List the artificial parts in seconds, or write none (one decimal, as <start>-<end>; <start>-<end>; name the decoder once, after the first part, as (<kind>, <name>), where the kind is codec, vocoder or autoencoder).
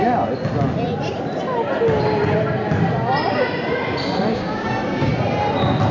4.3-5.1 (codec, DAC)